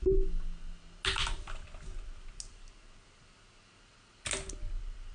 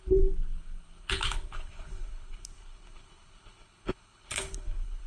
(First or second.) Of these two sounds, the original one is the first